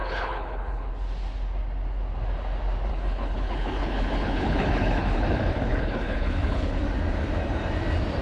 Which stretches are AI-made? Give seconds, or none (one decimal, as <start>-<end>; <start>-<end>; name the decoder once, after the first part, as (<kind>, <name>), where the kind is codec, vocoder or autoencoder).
0.0-0.9 (codec, HILCodec); 2.9-6.8